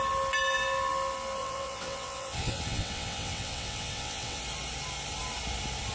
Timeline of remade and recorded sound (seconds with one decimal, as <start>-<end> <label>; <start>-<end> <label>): 0.0-1.4 recorded; 1.4-4.4 remade; 4.4-5.9 recorded